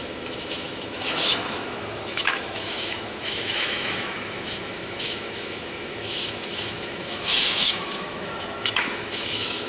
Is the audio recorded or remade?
remade